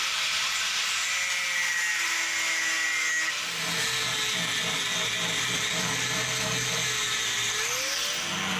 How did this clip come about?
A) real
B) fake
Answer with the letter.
A